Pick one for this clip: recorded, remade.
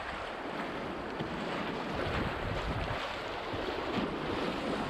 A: recorded